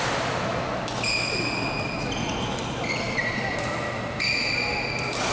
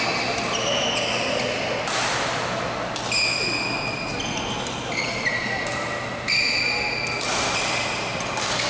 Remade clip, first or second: first